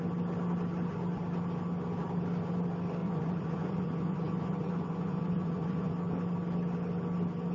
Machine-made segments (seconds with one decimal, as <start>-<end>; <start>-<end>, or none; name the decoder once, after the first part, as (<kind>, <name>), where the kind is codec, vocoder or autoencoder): 3.0-5.9 (vocoder, Vocos)